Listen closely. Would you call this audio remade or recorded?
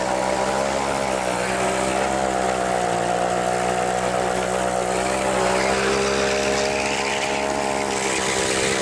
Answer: recorded